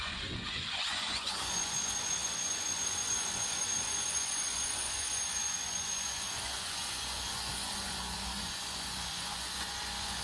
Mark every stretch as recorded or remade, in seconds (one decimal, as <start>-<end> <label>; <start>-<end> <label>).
0.0-10.2 remade